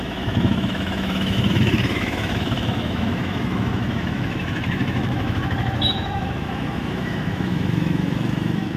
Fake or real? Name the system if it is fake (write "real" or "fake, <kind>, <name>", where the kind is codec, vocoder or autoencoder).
fake, autoencoder, DAC-VAE